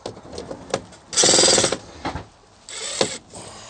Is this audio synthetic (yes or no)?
no